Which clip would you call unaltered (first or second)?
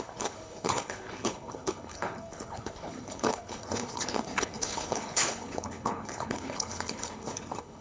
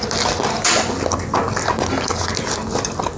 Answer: second